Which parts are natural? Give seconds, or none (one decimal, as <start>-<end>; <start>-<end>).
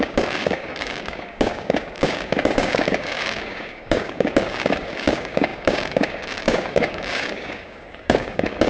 none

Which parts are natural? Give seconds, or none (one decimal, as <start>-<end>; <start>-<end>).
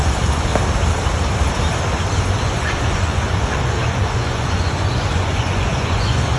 0.5-2.4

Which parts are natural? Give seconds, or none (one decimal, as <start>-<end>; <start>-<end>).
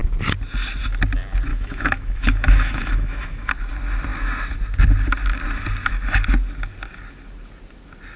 0.0-1.5; 3.5-8.2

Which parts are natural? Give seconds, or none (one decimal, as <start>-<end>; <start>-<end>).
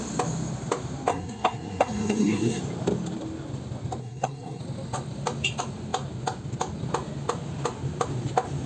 0.0-1.1; 2.6-4.0; 4.6-8.7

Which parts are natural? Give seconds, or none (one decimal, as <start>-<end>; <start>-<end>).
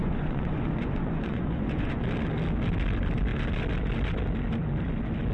2.0-5.3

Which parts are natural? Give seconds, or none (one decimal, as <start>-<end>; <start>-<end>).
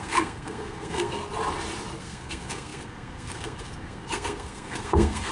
1.2-2.0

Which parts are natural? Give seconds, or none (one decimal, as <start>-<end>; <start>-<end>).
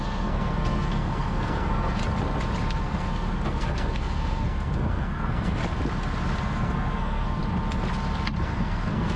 2.0-2.8; 5.6-6.4; 7.4-8.4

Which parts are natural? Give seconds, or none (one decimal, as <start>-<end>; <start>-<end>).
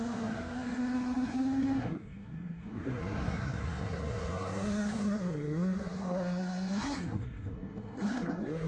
none